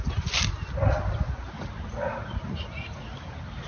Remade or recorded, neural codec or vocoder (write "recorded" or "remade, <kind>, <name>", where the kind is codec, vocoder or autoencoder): recorded